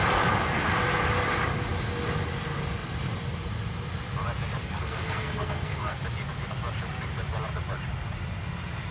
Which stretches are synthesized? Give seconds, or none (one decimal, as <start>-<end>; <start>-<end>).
4.6-6.0